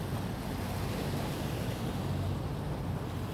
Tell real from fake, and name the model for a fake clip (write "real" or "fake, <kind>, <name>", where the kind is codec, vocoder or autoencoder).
real